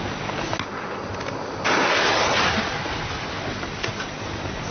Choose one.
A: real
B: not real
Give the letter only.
A